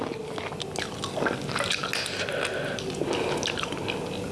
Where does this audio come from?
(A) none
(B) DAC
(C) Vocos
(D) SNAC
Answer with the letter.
A